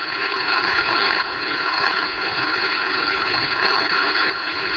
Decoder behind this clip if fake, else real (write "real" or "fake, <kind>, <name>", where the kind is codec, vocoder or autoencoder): fake, codec, HILCodec